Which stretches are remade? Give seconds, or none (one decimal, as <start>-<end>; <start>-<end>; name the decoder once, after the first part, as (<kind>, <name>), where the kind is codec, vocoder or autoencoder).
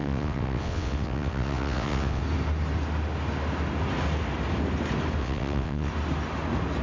0.0-2.2 (vocoder, WaveNeXt); 5.2-5.9